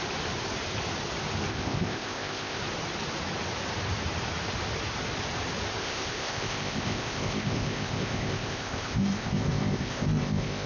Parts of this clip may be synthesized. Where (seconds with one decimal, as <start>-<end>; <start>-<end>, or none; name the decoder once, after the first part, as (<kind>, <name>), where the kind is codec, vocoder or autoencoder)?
1.5-2.6 (codec, ZipCodec); 5.8-10.7

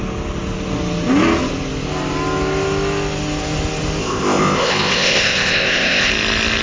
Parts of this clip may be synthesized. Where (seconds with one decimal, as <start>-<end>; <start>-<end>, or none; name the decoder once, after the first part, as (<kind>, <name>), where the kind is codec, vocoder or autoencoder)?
4.0-6.1 (codec, ZipCodec)

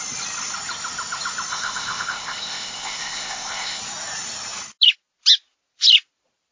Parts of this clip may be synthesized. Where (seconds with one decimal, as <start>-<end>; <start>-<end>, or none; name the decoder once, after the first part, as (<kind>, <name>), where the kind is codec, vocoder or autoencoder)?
1.5-3.8 (codec, ZipCodec)

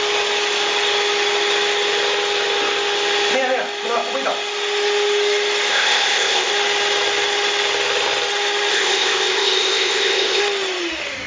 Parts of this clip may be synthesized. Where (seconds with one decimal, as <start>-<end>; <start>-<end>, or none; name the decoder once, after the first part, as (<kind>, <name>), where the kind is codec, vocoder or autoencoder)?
5.7-6.5 (codec, ZipCodec); 8.7-10.4

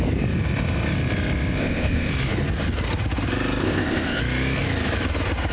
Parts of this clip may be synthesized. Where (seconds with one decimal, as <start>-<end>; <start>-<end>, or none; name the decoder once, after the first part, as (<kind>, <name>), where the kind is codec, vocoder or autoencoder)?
1.6-2.1 (codec, ZipCodec); 3.6-4.2

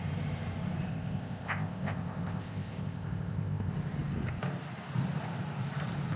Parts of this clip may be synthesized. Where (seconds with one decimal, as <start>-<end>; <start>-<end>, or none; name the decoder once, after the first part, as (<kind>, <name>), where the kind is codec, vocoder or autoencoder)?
0.9-3.7 (codec, ZipCodec)